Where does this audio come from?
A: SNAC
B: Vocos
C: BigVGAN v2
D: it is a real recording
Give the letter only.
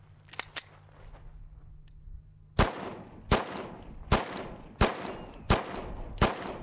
D